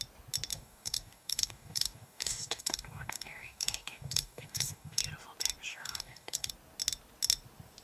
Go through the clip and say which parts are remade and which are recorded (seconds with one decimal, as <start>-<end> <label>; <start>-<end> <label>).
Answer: 0.0-0.5 recorded; 0.5-5.0 remade; 5.0-5.7 recorded; 5.7-6.5 remade; 6.5-7.8 recorded